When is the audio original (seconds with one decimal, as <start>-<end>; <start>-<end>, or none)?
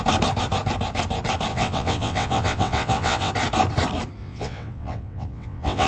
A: 0.0-1.5; 3.3-4.2